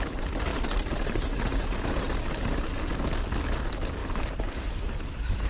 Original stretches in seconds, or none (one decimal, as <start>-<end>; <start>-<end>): 0.0-0.5; 1.6-4.0; 4.9-5.5